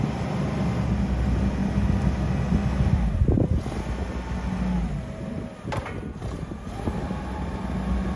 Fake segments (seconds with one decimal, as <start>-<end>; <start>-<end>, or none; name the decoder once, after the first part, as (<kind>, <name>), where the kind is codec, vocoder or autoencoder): none